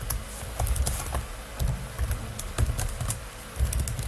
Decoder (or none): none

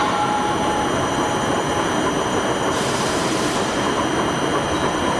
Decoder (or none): vocoder, BigVGAN v2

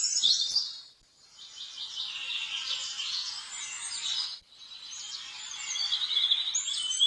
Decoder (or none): none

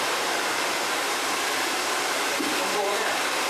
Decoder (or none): vocoder, BigVGAN v2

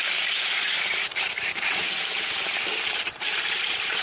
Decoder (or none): vocoder, BigVGAN v2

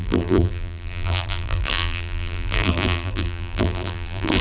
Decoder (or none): vocoder, BigVGAN v2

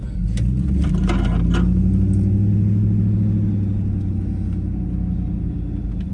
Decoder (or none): none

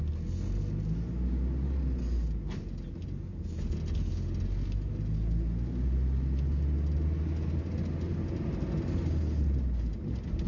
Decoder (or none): none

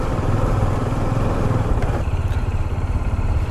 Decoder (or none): vocoder, BigVGAN v2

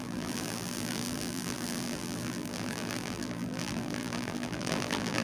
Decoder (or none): vocoder, BigVGAN v2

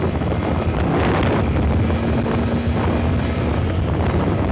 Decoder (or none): none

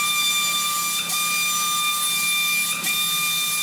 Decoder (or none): none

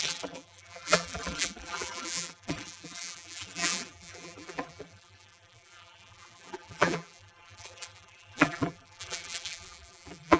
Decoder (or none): vocoder, BigVGAN v2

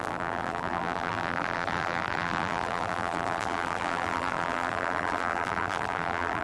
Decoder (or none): vocoder, BigVGAN v2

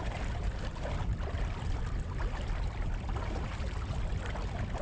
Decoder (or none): none